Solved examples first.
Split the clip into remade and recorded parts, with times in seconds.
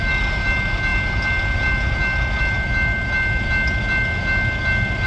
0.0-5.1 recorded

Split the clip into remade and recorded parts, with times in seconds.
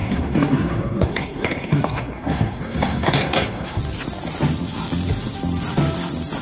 0.0-3.8 remade; 3.8-6.4 recorded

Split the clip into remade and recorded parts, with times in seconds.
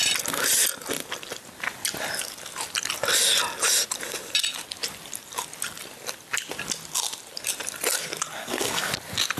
0.0-8.4 recorded; 8.4-8.9 remade; 8.9-9.4 recorded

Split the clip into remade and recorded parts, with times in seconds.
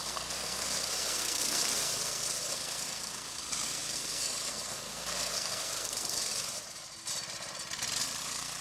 0.0-6.3 remade; 6.3-8.2 recorded; 8.2-8.6 remade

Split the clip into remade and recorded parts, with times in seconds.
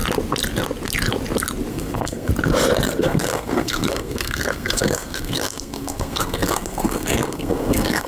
0.0-1.7 recorded; 1.7-2.3 remade; 2.3-3.0 recorded; 3.0-8.1 remade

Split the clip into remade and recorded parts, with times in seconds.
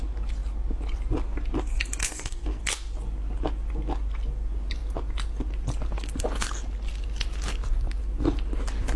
0.0-2.0 recorded; 2.0-2.6 remade; 2.6-9.0 recorded